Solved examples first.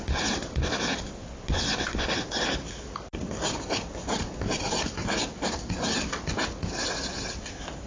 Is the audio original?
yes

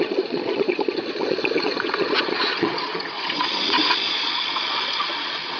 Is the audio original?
no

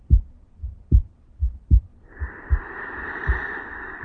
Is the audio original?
yes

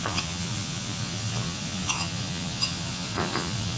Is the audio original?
no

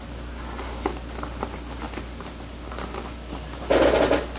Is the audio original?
yes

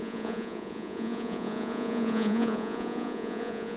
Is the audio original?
no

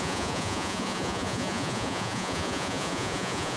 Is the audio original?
no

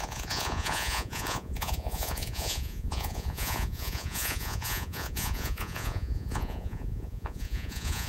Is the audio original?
no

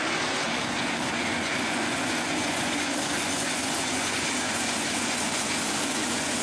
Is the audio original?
no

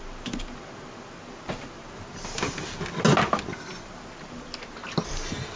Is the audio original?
yes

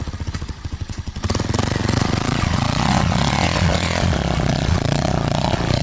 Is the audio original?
no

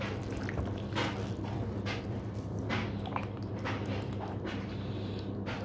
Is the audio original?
yes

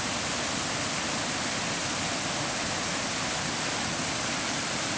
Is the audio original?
yes